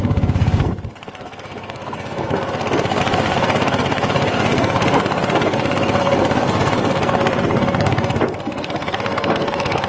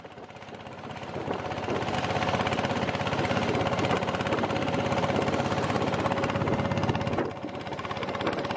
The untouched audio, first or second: second